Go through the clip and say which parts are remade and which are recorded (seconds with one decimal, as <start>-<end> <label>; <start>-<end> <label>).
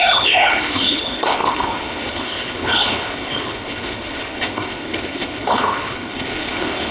0.0-6.9 remade